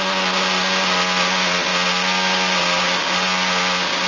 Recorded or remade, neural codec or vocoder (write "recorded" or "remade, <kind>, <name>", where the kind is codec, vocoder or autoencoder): recorded